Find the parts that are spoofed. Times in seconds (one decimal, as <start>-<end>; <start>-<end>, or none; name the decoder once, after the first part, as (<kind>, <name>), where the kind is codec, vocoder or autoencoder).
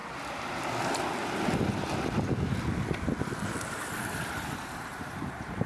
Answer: 3.2-5.7 (vocoder, BigVGAN v2)